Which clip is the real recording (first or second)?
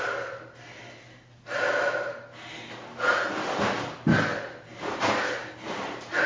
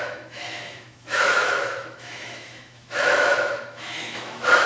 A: first